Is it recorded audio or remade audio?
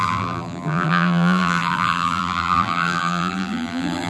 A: remade